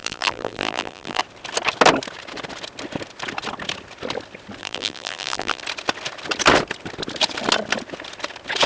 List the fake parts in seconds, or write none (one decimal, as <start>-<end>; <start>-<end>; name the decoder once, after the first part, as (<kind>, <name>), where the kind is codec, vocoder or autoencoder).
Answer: 0.0-1.2 (vocoder, BigVGAN v2); 4.6-5.6